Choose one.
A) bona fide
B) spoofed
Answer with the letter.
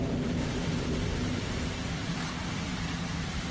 A